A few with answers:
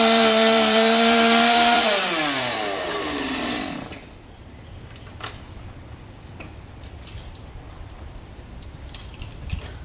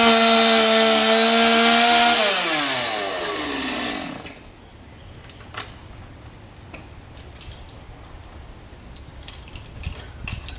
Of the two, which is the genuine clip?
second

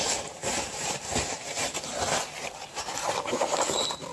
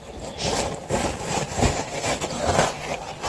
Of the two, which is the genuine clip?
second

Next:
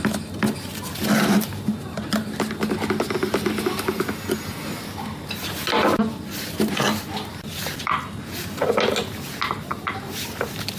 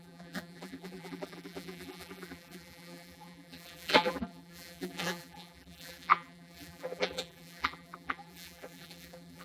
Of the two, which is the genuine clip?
first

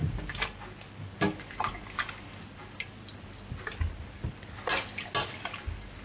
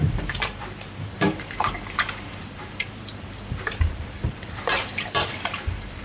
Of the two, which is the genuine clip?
first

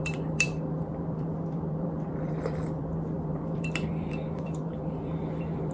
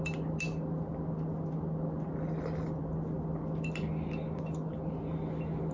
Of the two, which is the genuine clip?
second